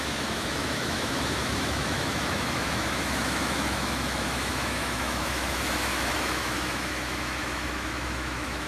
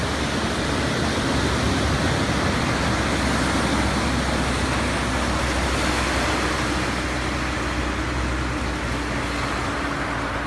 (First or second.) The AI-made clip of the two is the first